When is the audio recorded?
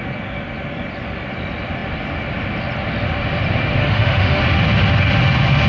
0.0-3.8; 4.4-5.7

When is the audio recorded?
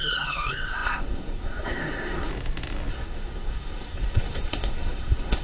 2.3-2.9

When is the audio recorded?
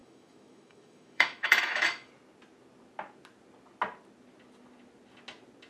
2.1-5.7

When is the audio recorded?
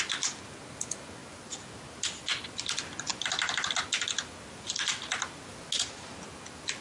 0.0-6.8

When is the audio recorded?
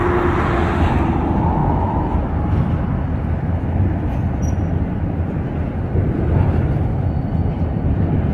0.0-8.3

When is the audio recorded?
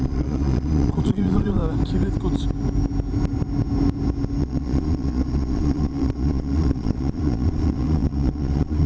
1.6-4.4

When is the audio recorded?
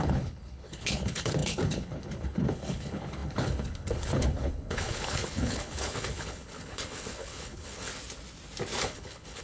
7.9-8.8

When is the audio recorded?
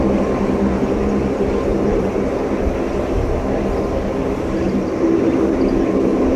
0.0-1.7; 2.6-4.2; 5.2-6.4